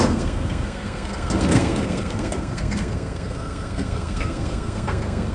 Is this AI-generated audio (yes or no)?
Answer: yes